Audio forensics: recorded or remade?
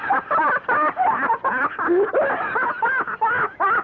recorded